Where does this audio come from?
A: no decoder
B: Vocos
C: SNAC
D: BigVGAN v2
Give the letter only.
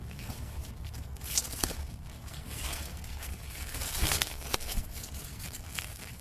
C